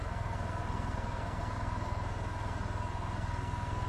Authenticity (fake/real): fake